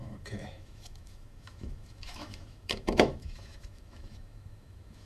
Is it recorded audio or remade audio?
remade